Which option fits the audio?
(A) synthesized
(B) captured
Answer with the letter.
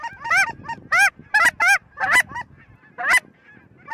B